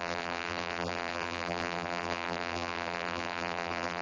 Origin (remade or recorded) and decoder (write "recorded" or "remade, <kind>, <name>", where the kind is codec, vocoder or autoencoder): remade, vocoder, BigVGAN v2